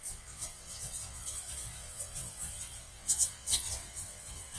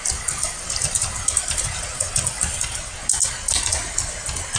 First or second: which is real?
second